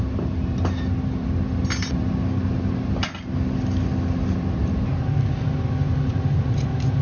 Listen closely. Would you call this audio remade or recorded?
recorded